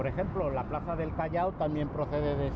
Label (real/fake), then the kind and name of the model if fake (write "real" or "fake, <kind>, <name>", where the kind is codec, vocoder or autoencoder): real